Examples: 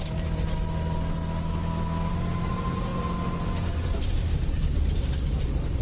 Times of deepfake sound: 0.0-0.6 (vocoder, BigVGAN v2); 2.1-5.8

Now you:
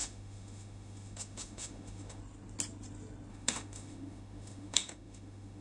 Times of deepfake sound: 0.0-2.2 (autoencoder, DAC-VAE); 3.3-5.6

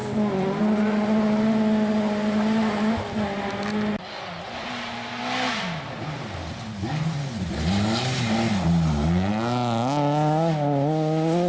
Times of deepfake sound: none

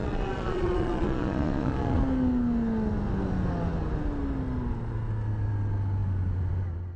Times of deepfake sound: 0.0-2.0 (vocoder, Vocos)

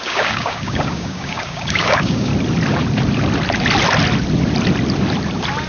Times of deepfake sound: 0.0-2.3 (codec, DAC)

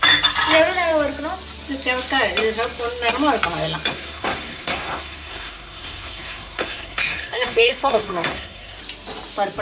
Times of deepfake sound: 3.9-8.8 (codec, SNAC)